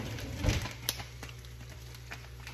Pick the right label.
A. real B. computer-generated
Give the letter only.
A